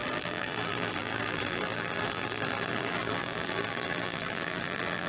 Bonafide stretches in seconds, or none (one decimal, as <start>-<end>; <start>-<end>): none